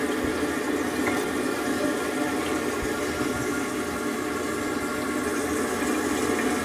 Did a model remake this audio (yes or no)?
no